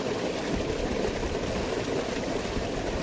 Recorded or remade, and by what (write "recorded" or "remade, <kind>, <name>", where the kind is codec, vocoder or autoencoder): recorded